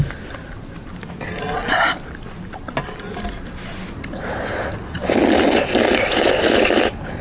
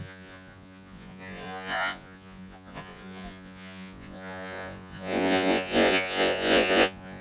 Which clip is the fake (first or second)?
second